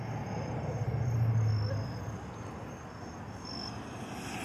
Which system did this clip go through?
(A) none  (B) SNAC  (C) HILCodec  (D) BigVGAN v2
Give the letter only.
A